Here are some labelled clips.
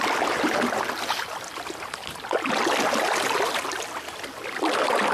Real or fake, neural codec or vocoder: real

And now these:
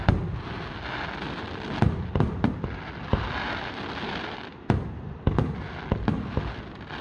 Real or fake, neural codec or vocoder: real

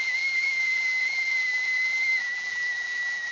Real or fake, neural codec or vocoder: fake, vocoder, BigVGAN v2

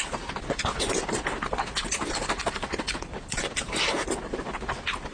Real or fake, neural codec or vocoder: real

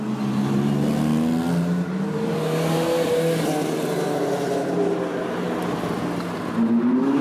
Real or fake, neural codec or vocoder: real